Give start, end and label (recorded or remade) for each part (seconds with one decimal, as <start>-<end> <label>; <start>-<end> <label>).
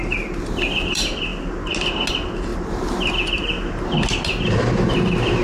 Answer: 0.0-2.5 recorded; 2.5-3.1 remade; 3.1-5.4 recorded